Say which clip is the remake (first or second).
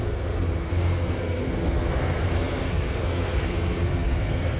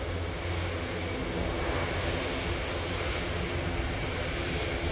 first